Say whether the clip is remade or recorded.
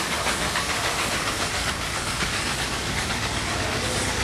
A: remade